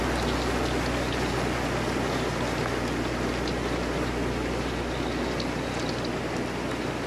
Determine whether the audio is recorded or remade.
recorded